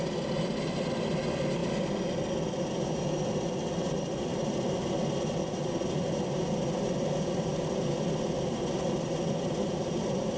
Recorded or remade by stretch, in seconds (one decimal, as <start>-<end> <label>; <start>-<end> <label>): 0.0-10.4 recorded